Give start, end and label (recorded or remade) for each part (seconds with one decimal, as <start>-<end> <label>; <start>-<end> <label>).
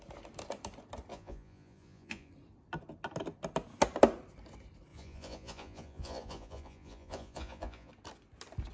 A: 0.0-1.1 recorded; 1.1-2.3 remade; 2.3-4.9 recorded; 4.9-7.9 remade; 7.9-8.7 recorded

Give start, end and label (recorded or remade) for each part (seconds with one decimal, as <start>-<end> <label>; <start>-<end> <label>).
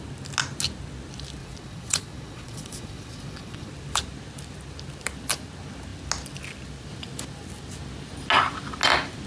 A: 0.0-1.4 recorded; 1.4-3.7 remade; 3.7-9.3 recorded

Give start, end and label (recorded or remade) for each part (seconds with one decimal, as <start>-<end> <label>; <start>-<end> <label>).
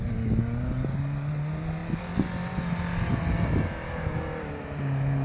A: 0.0-5.2 recorded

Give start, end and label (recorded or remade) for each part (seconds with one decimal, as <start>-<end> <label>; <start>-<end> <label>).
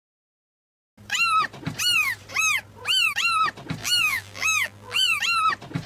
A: 0.0-3.8 recorded; 3.8-5.2 remade; 5.2-5.9 recorded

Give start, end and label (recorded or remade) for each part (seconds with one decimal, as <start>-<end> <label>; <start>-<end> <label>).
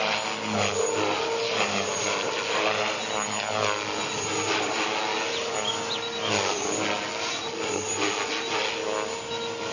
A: 0.0-9.7 recorded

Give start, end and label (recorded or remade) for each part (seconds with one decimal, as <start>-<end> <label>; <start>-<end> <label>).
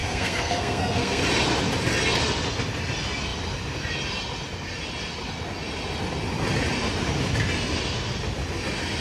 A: 0.0-1.2 remade; 1.2-9.0 recorded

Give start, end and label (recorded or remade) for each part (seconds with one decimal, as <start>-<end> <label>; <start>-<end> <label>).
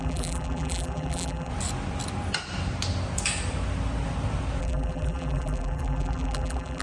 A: 0.0-1.5 remade; 1.5-4.6 recorded; 4.6-6.8 remade